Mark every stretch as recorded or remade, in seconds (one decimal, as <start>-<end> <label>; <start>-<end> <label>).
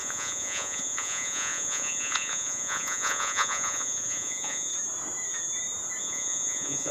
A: 0.0-4.7 remade; 4.7-6.0 recorded; 6.0-6.9 remade